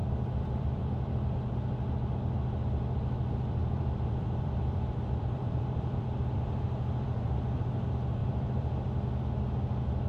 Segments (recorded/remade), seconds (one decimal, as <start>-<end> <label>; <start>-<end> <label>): 0.0-1.5 remade; 1.5-3.6 recorded; 3.6-7.6 remade; 7.6-8.2 recorded; 8.2-9.0 remade; 9.0-10.1 recorded